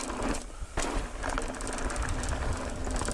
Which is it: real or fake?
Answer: real